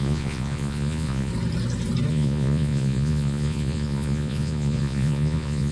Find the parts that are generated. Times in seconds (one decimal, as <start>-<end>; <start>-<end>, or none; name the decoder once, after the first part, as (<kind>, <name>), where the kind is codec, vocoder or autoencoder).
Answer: 0.0-1.3 (vocoder, Vocos); 2.1-5.7